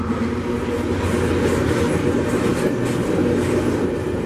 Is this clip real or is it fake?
real